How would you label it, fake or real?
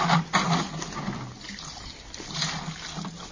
real